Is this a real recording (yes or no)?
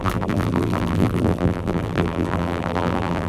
no